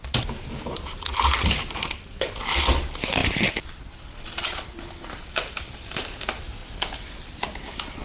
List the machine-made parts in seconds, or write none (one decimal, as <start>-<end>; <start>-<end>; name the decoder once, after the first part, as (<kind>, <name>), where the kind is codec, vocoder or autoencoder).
none